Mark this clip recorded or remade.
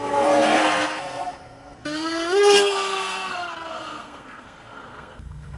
remade